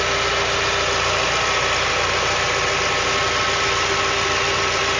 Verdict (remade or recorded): recorded